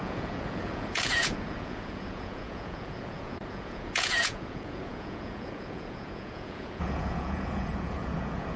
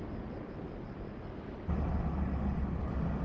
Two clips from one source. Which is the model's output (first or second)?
first